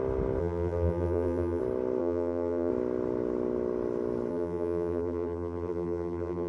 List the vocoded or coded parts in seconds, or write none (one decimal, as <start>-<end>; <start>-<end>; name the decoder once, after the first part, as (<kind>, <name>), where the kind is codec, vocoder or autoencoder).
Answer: 0.4-1.6 (vocoder, BigVGAN v2); 2.0-2.7; 4.3-6.5